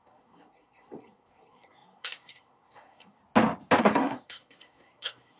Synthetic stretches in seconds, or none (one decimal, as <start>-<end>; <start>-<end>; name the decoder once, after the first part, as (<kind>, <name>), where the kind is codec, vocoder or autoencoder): 0.0-3.2 (codec, SNAC); 3.8-5.4